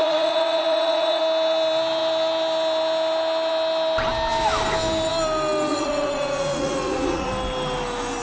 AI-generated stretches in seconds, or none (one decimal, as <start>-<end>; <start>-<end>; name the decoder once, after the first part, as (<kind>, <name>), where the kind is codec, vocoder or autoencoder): 0.0-1.2 (vocoder, Vocos); 5.7-7.3